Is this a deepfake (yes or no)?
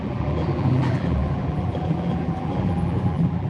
yes